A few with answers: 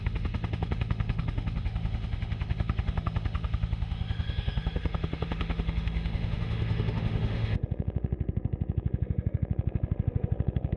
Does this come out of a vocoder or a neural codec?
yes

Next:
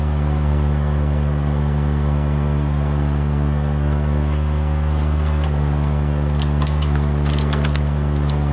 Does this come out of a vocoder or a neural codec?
yes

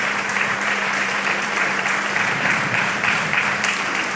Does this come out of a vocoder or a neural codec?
yes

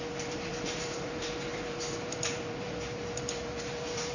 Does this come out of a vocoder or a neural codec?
yes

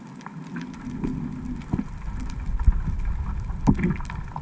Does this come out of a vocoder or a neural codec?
no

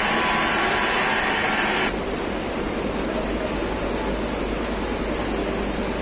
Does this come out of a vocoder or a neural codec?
no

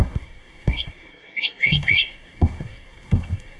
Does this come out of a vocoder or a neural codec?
yes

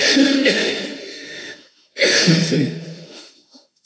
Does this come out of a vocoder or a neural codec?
yes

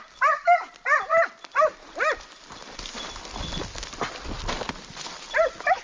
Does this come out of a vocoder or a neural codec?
no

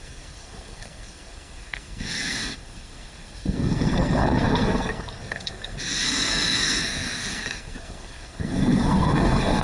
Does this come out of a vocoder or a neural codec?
yes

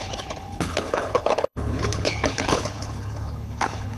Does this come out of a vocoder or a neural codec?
yes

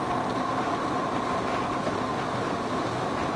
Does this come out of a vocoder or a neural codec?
no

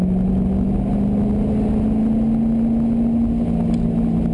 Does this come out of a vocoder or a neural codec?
no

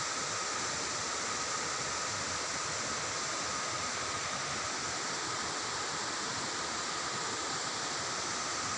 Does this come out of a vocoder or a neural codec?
no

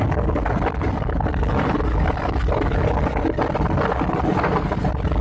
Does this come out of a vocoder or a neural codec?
no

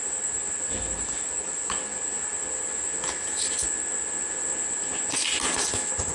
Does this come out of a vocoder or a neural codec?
no